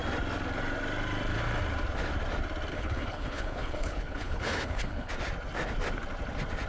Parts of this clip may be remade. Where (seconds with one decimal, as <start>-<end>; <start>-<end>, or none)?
2.7-5.1